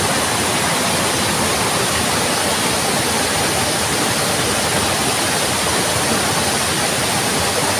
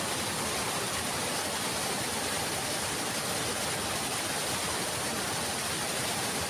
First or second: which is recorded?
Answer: first